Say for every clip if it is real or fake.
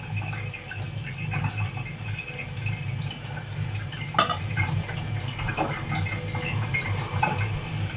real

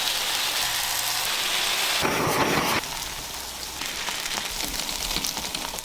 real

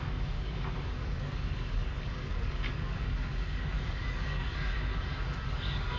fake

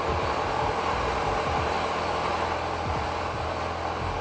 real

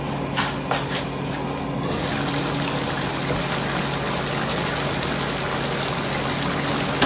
real